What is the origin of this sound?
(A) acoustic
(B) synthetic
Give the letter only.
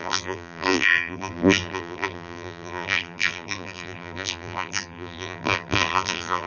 B